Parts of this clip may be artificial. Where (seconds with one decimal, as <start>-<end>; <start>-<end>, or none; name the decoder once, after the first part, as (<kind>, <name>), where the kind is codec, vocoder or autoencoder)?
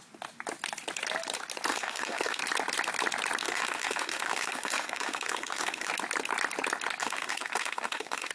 1.7-2.4 (autoencoder, DAC-VAE); 3.4-5.9; 7.0-8.3